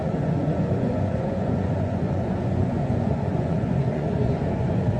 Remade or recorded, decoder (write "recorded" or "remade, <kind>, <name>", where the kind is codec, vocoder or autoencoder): remade, vocoder, Vocos